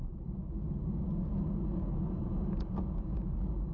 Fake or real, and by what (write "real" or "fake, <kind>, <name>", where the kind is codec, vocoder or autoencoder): real